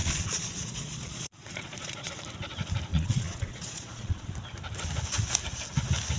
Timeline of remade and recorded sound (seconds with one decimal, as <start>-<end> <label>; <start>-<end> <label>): 0.0-2.1 remade; 2.1-2.9 recorded; 2.9-4.3 remade; 4.3-6.2 recorded